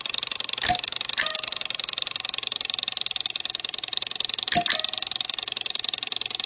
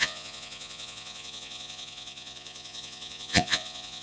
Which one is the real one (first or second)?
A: first